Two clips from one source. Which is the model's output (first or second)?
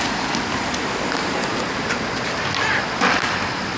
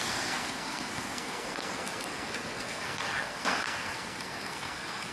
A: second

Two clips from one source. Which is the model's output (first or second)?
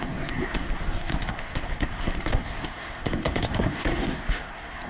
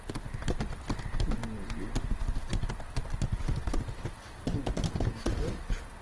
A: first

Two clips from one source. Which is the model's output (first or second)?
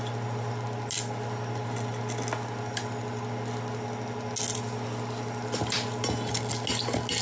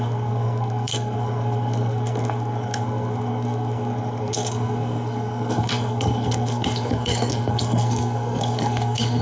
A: second